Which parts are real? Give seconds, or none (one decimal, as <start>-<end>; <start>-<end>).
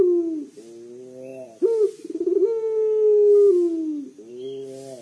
0.0-5.0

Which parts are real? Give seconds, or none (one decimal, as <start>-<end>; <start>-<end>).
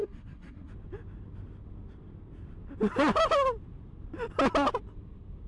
0.7-5.5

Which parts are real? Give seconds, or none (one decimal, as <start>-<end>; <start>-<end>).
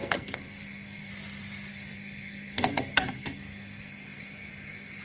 1.1-1.7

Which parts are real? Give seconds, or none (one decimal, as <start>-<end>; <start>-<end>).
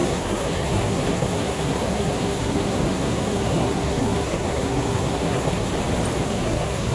5.7-6.2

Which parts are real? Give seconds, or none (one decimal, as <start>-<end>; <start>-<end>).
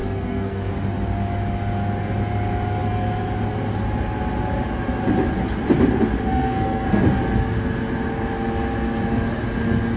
0.7-6.3; 7.2-10.0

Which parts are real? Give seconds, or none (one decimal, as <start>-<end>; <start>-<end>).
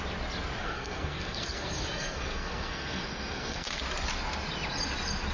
0.0-0.6; 3.8-5.3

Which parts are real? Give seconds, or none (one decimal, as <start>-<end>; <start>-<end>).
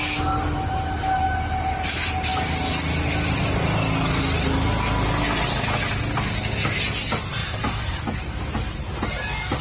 0.0-9.6